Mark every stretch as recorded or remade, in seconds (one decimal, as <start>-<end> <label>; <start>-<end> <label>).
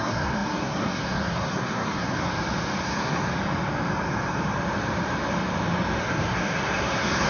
0.0-2.3 remade; 2.3-2.8 recorded; 2.8-3.3 remade; 3.3-6.0 recorded; 6.0-7.3 remade